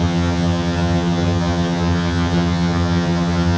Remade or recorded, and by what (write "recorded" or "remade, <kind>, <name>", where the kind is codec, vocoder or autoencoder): remade, vocoder, HiFi-GAN